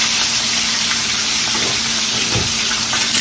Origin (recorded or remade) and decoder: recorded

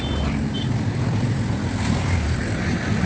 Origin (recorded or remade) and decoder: recorded